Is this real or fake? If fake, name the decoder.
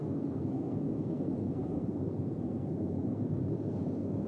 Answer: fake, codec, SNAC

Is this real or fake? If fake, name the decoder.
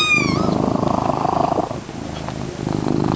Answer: real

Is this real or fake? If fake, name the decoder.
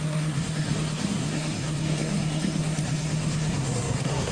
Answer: fake, codec, SNAC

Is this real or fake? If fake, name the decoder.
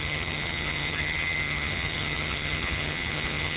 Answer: fake, vocoder, HiFi-GAN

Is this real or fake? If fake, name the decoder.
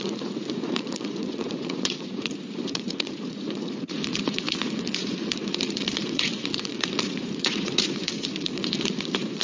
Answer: fake, vocoder, Vocos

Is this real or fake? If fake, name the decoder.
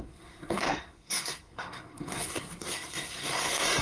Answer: fake, codec, SNAC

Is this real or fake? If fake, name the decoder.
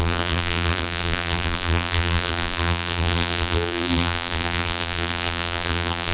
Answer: fake, vocoder, BigVGAN v2